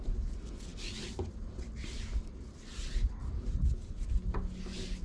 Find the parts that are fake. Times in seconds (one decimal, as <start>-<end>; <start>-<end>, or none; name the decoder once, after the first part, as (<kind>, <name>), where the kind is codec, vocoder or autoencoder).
none